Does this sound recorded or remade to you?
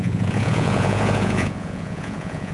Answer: remade